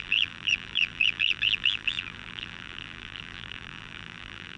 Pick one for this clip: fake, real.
fake